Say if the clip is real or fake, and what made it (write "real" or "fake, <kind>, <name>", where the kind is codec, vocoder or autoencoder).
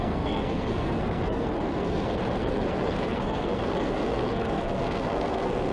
fake, codec, SNAC